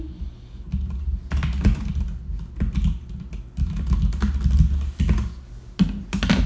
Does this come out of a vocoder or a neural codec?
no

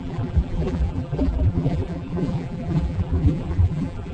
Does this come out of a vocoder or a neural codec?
yes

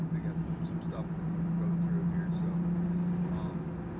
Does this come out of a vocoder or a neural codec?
no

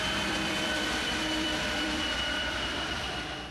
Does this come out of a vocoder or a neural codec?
yes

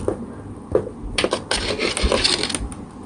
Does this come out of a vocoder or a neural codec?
no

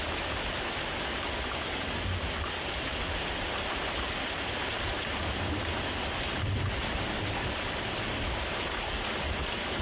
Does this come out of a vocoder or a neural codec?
no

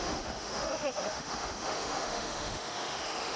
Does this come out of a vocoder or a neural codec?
yes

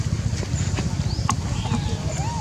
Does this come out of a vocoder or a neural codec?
no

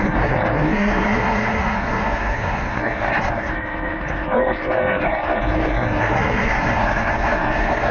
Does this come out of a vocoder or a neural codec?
yes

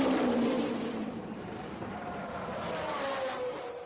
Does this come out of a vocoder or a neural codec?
yes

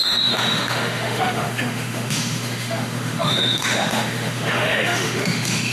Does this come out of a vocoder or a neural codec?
yes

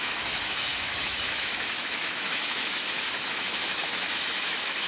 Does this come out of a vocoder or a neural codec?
yes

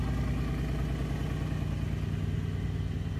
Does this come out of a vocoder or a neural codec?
no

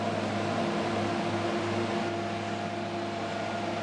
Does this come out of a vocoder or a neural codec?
no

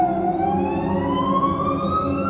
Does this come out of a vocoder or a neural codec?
no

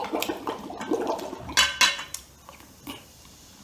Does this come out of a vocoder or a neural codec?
no